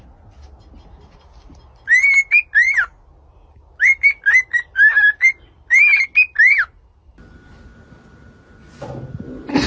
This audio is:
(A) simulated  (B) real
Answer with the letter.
B